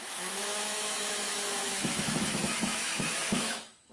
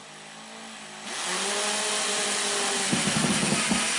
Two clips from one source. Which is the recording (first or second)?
second